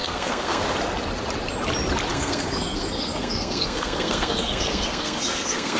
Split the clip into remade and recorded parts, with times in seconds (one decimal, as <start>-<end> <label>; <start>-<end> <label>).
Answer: 0.0-0.6 remade; 0.6-2.1 recorded; 2.1-5.8 remade